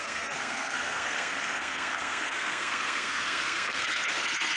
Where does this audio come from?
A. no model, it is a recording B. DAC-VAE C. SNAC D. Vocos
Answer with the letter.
C